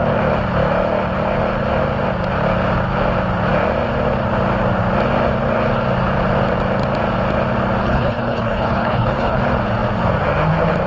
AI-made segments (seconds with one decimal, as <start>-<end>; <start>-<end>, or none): 7.8-9.4